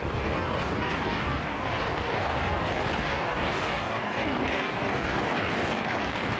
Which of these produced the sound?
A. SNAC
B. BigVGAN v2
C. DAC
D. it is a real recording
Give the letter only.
C